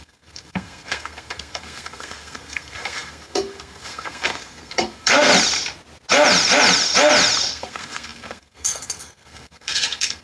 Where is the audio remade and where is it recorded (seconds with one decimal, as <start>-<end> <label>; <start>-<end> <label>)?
0.0-5.3 remade; 5.3-7.5 recorded; 7.5-10.2 remade